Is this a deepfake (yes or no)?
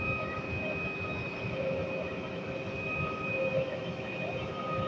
yes